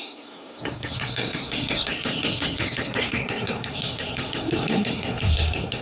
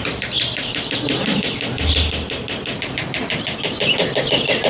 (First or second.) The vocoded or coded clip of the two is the first